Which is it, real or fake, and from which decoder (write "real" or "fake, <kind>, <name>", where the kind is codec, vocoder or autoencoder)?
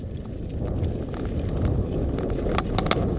real